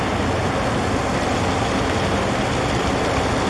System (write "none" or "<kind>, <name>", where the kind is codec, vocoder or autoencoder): none